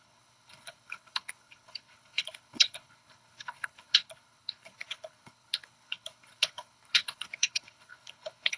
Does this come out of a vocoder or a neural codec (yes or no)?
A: yes